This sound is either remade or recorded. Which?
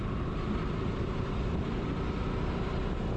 recorded